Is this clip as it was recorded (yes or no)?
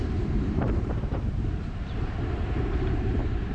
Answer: no